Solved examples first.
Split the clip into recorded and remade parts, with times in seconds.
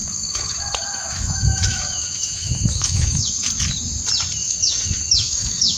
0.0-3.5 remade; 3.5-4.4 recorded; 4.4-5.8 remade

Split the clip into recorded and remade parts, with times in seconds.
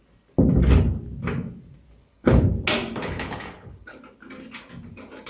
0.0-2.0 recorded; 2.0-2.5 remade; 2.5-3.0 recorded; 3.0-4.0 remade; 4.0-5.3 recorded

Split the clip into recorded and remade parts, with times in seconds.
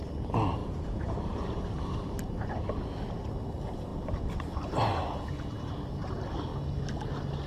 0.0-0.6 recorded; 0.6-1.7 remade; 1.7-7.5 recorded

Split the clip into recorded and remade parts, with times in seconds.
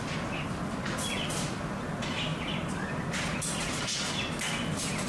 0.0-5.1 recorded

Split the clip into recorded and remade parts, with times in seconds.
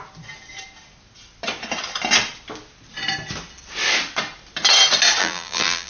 0.0-5.2 recorded; 5.2-5.9 remade